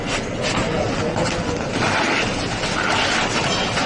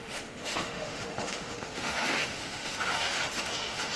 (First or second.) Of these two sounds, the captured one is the first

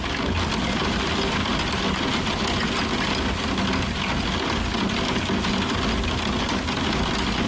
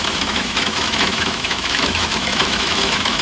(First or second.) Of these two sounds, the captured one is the first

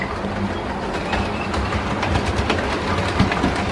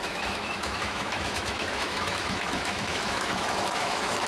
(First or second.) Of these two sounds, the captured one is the first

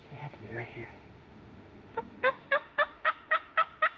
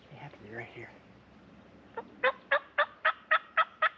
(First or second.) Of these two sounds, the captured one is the second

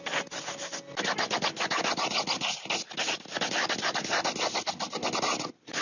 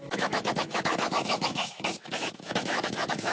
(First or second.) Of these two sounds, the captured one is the first